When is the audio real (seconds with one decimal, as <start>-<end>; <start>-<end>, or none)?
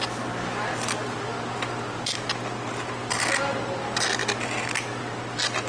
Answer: 0.0-5.7